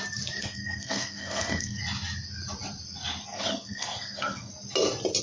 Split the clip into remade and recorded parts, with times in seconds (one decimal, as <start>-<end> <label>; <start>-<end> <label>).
0.0-0.4 recorded; 0.4-1.8 remade; 1.8-3.3 recorded; 3.3-4.5 remade; 4.5-5.2 recorded